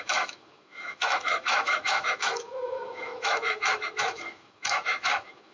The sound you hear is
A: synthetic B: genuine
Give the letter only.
A